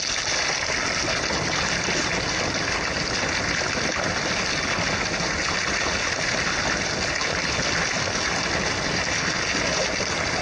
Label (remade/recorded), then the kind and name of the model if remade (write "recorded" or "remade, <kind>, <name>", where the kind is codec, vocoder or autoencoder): recorded